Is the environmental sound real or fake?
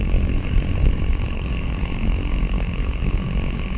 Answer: fake